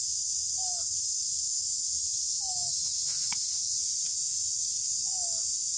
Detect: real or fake fake